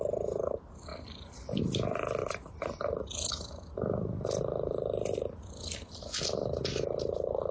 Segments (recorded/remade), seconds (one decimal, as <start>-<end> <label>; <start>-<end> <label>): 0.0-0.9 recorded; 0.9-1.6 remade; 1.6-2.2 recorded; 2.2-5.9 remade; 5.9-7.5 recorded